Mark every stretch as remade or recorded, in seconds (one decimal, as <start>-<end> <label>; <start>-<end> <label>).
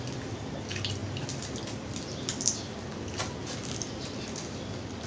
0.0-5.1 recorded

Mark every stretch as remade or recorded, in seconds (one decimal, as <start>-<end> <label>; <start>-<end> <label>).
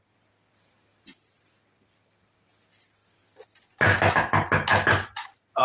0.0-5.6 recorded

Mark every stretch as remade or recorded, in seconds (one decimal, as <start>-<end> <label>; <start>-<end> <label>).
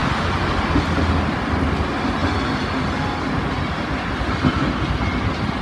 0.0-5.6 recorded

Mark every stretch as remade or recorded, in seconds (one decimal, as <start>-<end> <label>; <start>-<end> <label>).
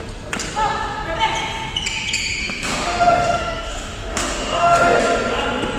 0.0-2.4 recorded; 2.4-5.0 remade; 5.0-5.8 recorded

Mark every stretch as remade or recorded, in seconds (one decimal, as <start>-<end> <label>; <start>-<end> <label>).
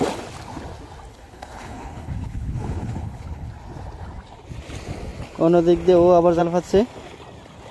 0.0-1.1 recorded; 1.1-3.5 remade; 3.5-7.7 recorded